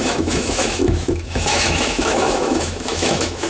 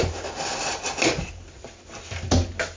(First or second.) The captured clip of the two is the second